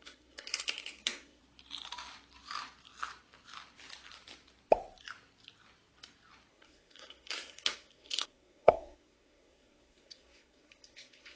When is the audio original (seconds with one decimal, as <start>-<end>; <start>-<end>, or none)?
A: 1.4-6.5

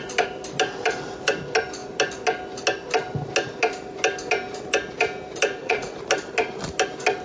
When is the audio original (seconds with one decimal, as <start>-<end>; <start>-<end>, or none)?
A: 0.0-5.5; 6.0-7.2